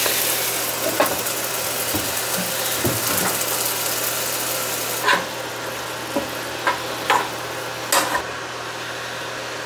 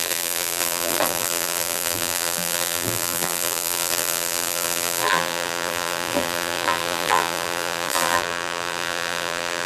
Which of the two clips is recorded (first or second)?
first